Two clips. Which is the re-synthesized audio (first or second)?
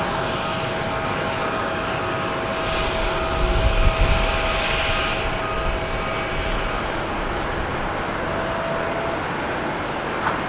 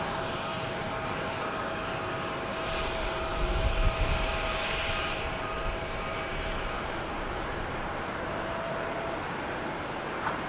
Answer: second